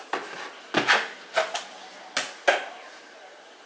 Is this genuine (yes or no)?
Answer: yes